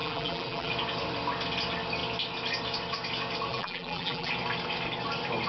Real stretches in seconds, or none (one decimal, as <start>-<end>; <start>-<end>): 0.7-3.5; 4.3-5.5